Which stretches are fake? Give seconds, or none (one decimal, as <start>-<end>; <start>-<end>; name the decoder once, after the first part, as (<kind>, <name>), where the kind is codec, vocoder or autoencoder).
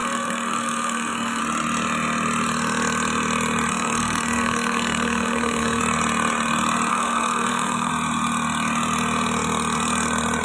0.0-1.4 (codec, SNAC); 3.7-5.8; 6.9-7.9